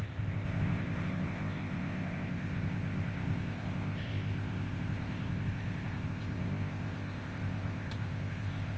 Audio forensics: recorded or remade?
remade